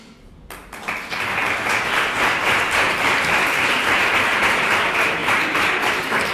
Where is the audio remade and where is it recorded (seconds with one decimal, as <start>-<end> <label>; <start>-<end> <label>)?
0.0-6.3 recorded